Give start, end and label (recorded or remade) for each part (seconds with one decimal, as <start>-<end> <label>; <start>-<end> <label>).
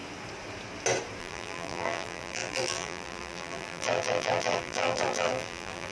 0.0-1.2 recorded; 1.2-5.9 remade